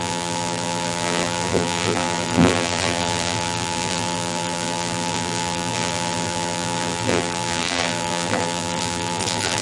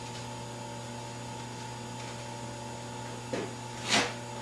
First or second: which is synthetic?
first